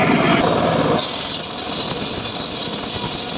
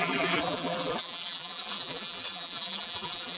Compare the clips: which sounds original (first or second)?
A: first